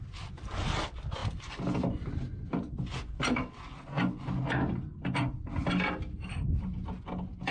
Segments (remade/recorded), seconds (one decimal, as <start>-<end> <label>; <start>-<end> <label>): 0.0-7.5 recorded